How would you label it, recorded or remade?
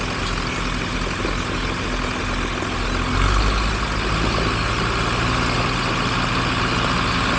recorded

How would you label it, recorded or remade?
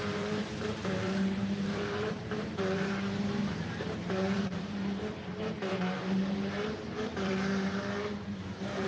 remade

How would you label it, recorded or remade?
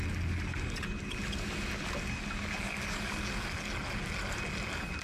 recorded